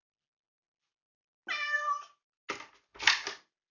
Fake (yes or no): no